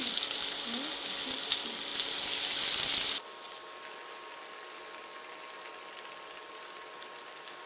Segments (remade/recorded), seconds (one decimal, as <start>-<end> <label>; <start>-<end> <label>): 0.0-7.7 recorded